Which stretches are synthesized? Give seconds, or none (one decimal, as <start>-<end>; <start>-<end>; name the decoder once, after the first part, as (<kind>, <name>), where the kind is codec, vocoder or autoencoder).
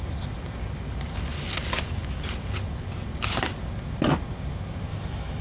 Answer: 4.9-5.4 (autoencoder, DAC-VAE)